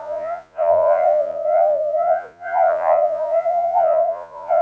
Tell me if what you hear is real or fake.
fake